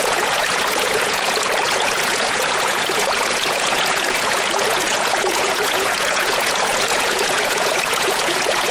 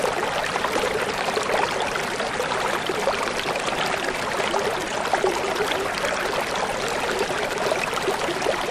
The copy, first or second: first